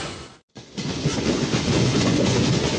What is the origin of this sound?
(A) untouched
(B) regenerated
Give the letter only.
B